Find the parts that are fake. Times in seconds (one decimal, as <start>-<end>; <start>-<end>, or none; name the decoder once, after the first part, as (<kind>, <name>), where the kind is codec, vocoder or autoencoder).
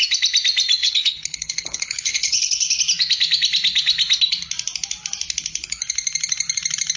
0.8-2.8 (codec, HILCodec)